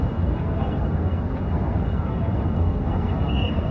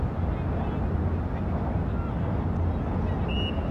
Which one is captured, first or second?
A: second